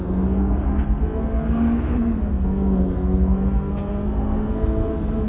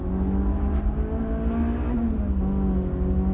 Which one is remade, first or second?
first